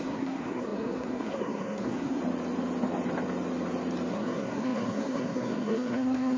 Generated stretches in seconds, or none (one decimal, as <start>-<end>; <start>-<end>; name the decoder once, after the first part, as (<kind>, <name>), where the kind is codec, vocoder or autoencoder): 0.0-2.2 (codec, SNAC); 4.1-6.4